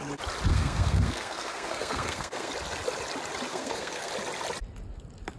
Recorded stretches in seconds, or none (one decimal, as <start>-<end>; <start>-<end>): 0.0-0.5; 2.5-3.5; 4.1-5.4